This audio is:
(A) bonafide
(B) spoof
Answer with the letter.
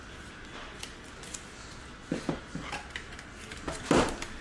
A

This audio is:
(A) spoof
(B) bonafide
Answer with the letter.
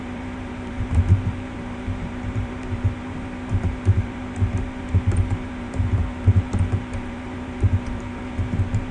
A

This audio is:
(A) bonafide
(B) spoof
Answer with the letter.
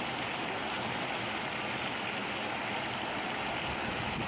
A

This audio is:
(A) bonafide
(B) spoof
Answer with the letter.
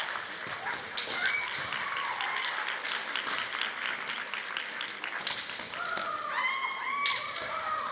A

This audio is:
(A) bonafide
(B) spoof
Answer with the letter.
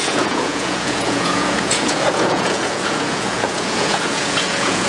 B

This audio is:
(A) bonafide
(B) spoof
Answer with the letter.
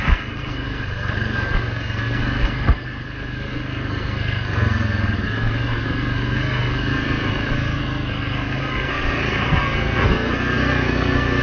B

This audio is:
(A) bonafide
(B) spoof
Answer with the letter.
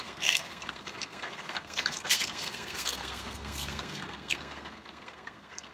B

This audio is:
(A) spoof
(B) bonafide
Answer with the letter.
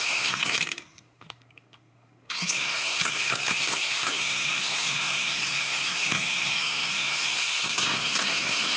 A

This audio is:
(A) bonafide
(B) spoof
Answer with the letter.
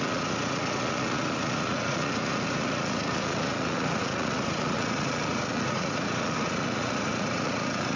B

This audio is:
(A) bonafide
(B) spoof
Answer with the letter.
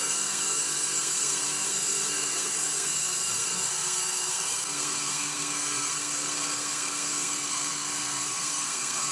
B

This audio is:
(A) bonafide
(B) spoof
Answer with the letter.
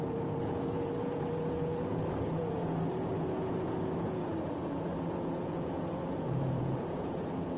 B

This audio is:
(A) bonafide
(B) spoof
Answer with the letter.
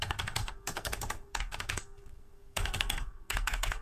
B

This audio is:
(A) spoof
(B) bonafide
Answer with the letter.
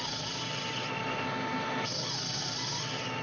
B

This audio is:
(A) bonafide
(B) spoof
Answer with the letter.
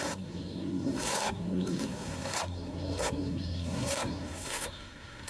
B